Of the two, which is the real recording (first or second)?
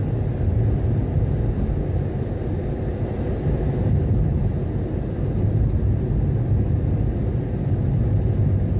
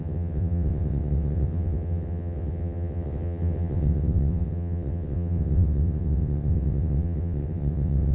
first